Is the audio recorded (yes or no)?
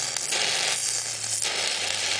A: yes